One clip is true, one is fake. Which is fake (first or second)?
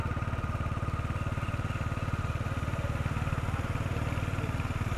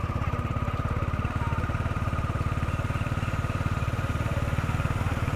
second